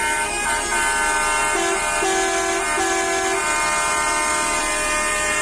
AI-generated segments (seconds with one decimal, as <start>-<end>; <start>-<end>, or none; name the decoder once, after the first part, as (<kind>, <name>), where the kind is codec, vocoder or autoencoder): none